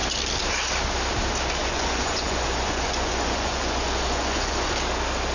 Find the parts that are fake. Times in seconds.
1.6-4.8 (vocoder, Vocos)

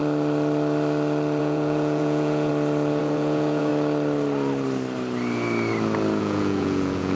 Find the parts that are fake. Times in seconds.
1.4-2.5 (vocoder, Vocos); 3.0-3.7; 6.2-7.1

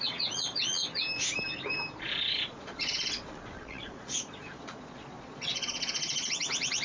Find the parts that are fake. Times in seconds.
0.0-0.8 (vocoder, Vocos); 2.0-6.8

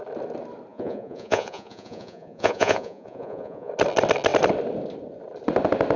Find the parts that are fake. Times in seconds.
0.7-3.7 (vocoder, Vocos)

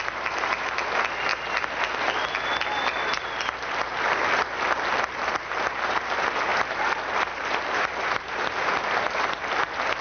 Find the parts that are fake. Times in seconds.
none